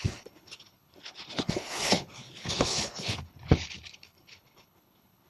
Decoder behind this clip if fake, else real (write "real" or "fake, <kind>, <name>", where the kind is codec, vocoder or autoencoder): fake, codec, HILCodec